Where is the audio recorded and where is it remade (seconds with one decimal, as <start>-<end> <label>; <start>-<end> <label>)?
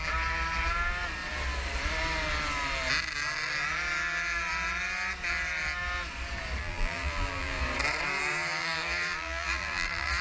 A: 0.0-6.6 recorded; 6.6-7.6 remade; 7.6-8.3 recorded; 8.3-10.2 remade